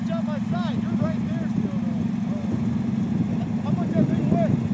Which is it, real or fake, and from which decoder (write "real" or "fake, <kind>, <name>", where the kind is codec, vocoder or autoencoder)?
real